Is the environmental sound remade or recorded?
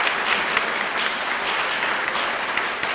recorded